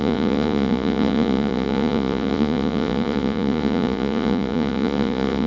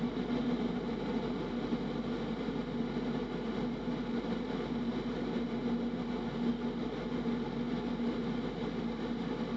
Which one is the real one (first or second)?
second